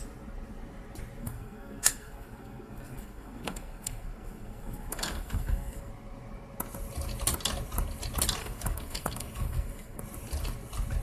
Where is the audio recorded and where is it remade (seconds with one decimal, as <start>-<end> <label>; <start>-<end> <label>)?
0.0-1.2 recorded; 1.2-5.9 remade; 5.9-8.4 recorded; 8.4-10.0 remade; 10.0-11.0 recorded